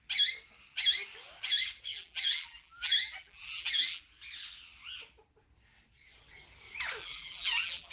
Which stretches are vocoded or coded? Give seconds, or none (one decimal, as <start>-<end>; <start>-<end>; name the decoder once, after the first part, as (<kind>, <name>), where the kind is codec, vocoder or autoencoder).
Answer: 1.9-4.0 (vocoder, BigVGAN v2); 7.0-7.9